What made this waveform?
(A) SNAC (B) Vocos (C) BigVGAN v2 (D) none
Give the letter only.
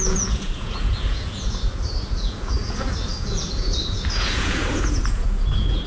B